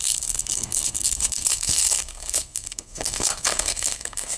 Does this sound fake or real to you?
fake